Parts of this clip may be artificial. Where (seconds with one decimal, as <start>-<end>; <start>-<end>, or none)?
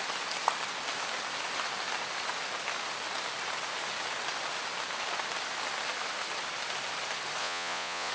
7.4-8.1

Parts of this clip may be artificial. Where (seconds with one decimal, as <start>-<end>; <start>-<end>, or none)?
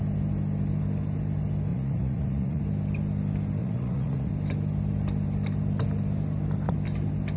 1.7-2.6; 3.6-4.3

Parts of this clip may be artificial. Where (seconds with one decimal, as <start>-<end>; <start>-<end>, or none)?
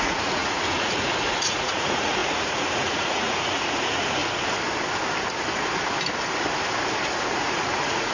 0.0-4.2; 7.3-8.1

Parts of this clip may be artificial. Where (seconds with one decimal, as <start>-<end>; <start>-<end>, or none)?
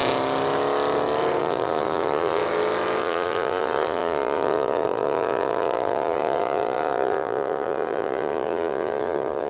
1.4-2.4; 3.0-9.5